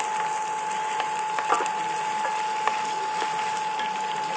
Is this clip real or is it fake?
real